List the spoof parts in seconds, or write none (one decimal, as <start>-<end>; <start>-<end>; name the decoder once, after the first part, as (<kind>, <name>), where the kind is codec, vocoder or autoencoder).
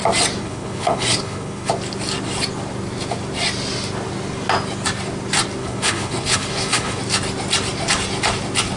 0.4-1.7 (codec, HILCodec); 5.6-7.0